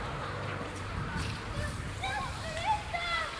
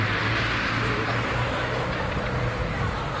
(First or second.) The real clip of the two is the second